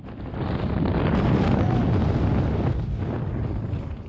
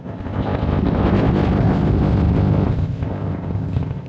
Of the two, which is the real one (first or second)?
first